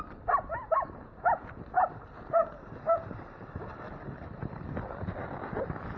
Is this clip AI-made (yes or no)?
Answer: yes